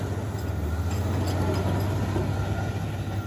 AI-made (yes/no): no